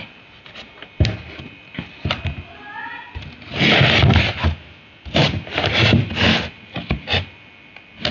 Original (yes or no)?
yes